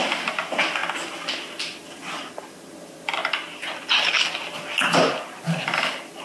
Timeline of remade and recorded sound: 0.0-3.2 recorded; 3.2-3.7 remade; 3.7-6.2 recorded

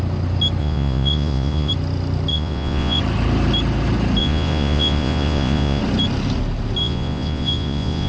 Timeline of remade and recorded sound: 0.0-0.6 recorded; 0.6-1.7 remade; 1.7-2.3 recorded; 2.3-3.0 remade; 3.0-4.2 recorded; 4.2-5.8 remade; 5.8-6.8 recorded; 6.8-8.1 remade

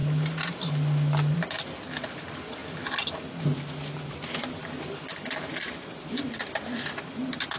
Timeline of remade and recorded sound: 0.0-7.6 recorded

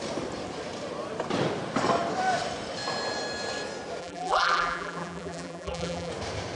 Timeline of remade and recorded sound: 0.0-4.0 recorded; 4.0-6.1 remade; 6.1-6.5 recorded

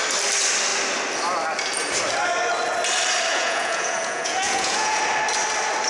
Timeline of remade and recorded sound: 0.0-3.3 recorded; 3.3-5.0 remade; 5.0-5.9 recorded

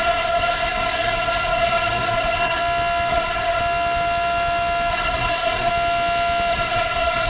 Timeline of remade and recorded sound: 0.0-2.6 remade; 2.6-3.1 recorded; 3.1-3.6 remade; 3.6-4.9 recorded; 4.9-5.7 remade; 5.7-6.5 recorded; 6.5-7.3 remade

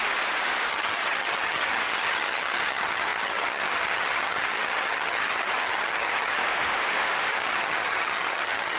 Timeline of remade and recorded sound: 0.0-0.7 recorded; 0.7-6.4 remade; 6.4-7.3 recorded; 7.3-8.8 remade

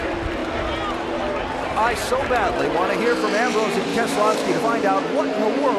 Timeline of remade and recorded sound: 0.0-3.9 recorded; 3.9-4.6 remade; 4.6-5.8 recorded